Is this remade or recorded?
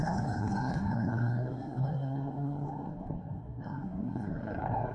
remade